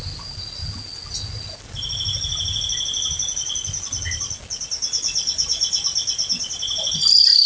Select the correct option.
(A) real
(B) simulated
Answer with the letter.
A